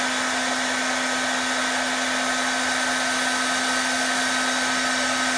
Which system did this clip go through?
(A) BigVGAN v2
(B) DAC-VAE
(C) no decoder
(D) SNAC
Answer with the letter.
C